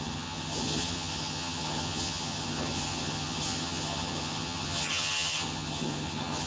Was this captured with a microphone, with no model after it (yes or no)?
no